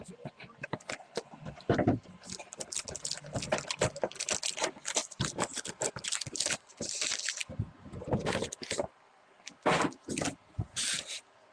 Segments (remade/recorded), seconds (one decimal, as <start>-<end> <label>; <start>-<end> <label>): 0.0-11.5 remade